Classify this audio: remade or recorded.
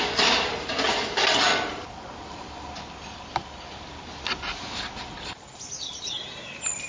recorded